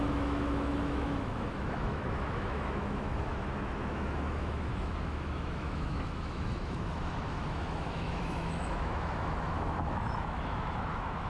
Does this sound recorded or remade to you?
remade